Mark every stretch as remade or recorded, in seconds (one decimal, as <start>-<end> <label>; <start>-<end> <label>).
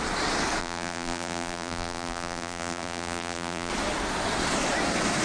0.0-0.6 recorded; 0.6-3.7 remade; 3.7-5.2 recorded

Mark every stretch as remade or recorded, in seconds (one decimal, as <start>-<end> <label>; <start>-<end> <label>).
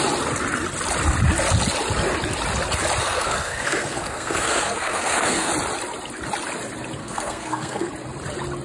0.0-3.0 recorded; 3.0-5.5 remade; 5.5-7.0 recorded; 7.0-7.9 remade; 7.9-8.6 recorded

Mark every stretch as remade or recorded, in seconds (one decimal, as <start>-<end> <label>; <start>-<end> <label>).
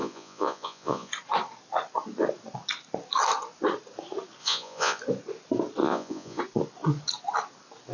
0.0-1.1 remade; 1.1-4.4 recorded; 4.4-5.0 remade; 5.0-5.8 recorded; 5.8-6.4 remade; 6.4-7.9 recorded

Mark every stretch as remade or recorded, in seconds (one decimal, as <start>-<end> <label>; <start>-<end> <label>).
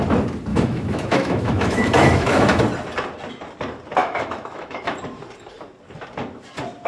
0.0-0.5 recorded; 0.5-2.6 remade; 2.6-4.0 recorded; 4.0-4.9 remade; 4.9-6.9 recorded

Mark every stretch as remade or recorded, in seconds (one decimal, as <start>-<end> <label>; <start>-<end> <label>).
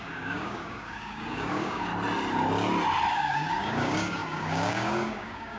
0.0-1.9 remade; 1.9-3.1 recorded; 3.1-5.6 remade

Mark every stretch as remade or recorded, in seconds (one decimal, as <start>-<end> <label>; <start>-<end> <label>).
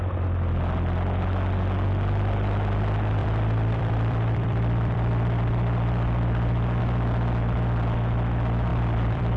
0.0-3.2 recorded; 3.2-6.8 remade; 6.8-8.7 recorded; 8.7-9.4 remade